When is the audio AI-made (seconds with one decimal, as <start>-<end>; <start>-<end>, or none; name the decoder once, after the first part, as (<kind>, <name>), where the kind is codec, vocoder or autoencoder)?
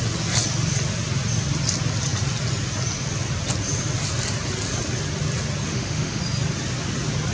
5.7-6.2 (autoencoder, DAC-VAE)